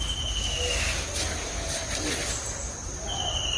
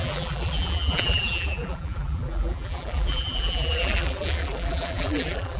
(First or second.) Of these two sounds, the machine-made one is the second